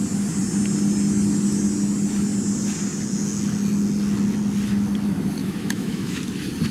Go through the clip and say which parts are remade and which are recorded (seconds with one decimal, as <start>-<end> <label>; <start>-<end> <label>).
0.0-5.4 recorded; 5.4-6.2 remade; 6.2-6.7 recorded